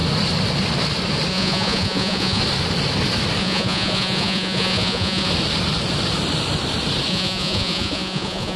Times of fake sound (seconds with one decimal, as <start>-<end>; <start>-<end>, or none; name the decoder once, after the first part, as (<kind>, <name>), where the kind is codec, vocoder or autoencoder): 1.3-2.4 (vocoder, Vocos); 3.4-5.3; 7.1-8.6